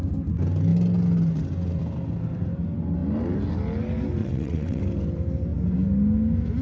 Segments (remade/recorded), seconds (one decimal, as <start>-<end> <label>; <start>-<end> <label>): 0.0-4.2 recorded; 4.2-4.8 remade; 4.8-6.6 recorded